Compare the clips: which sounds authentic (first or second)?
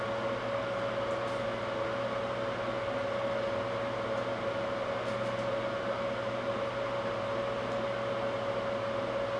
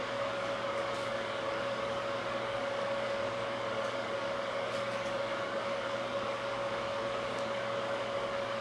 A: first